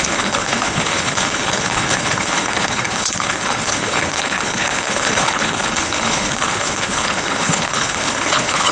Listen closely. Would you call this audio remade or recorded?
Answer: remade